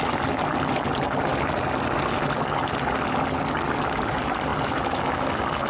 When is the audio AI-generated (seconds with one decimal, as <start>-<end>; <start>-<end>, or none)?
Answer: none